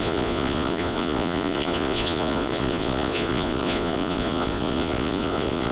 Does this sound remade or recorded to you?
remade